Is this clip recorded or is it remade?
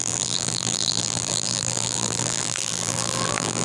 remade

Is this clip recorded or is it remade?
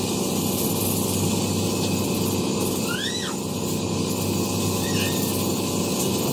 recorded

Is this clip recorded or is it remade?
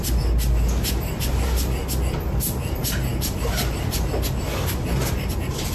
recorded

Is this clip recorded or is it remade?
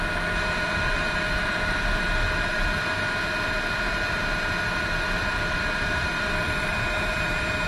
remade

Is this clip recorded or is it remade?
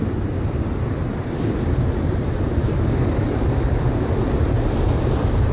remade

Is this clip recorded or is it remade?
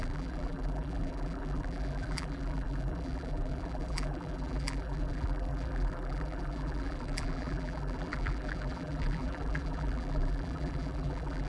remade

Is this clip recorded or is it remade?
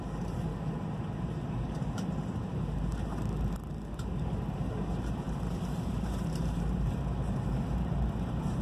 remade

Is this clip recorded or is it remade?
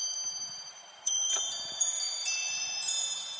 remade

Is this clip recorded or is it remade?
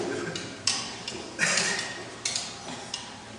recorded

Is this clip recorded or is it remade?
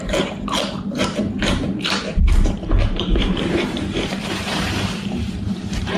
remade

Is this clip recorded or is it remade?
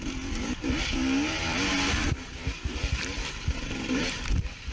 remade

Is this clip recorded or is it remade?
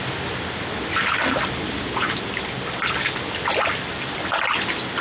recorded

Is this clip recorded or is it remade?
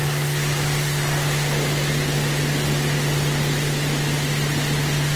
recorded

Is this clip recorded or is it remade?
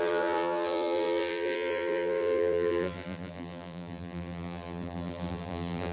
remade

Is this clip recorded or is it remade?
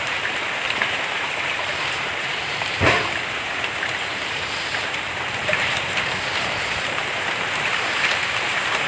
remade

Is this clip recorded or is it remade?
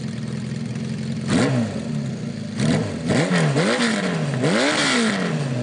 recorded